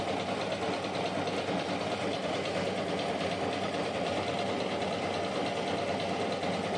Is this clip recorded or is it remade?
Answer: recorded